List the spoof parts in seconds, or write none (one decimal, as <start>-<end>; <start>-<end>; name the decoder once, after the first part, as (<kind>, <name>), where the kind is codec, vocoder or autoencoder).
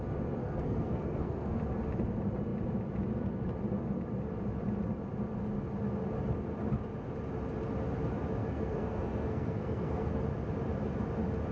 0.4-1.6 (codec, SNAC); 8.4-10.2